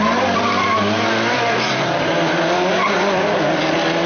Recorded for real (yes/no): no